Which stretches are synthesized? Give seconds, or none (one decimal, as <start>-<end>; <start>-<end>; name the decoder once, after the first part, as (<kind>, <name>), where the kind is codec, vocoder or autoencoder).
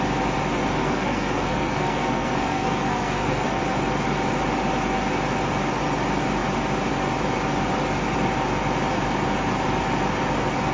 0.8-3.6 (codec, SNAC)